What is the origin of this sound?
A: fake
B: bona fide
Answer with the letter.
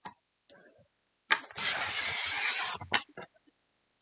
B